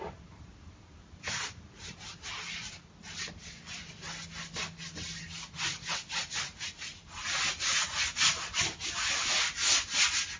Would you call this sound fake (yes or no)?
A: no